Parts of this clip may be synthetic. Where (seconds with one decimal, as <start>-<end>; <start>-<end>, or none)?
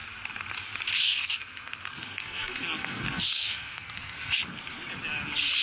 1.0-4.4